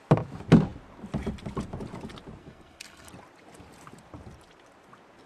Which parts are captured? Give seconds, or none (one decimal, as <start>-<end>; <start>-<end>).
0.0-2.4; 3.1-5.3